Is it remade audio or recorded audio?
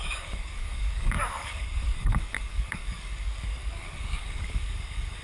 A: remade